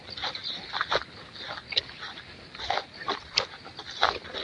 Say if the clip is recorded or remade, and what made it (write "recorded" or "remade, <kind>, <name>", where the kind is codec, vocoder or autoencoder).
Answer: recorded